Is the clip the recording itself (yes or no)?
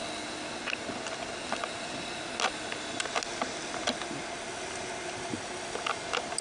yes